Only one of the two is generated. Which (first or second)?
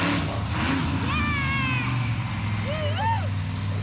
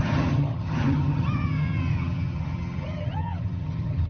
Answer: second